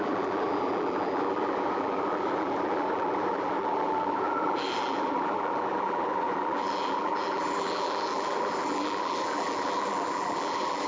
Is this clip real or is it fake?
fake